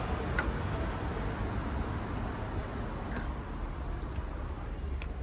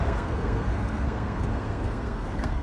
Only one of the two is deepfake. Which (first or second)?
second